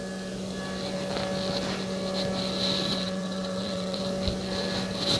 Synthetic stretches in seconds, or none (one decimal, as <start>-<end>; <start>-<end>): 2.9-4.0